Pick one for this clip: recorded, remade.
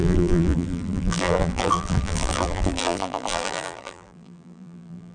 remade